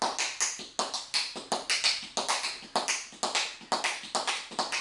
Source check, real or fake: real